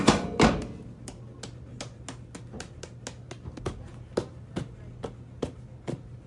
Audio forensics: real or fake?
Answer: real